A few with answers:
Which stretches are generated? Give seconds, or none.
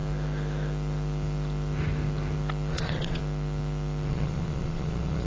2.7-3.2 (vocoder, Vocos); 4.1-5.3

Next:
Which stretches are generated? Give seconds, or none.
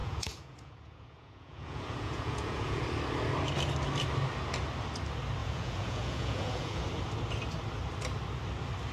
0.0-2.8 (vocoder, Vocos); 5.4-6.9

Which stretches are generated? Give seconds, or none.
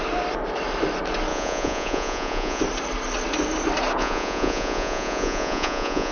1.3-2.6 (vocoder, Vocos); 4.0-6.1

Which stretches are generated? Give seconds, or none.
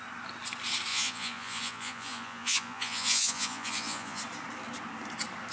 0.9-4.2 (vocoder, Vocos)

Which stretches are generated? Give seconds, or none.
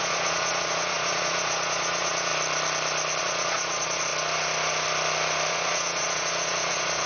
0.0-2.3 (vocoder, Vocos); 3.2-4.1; 5.5-7.1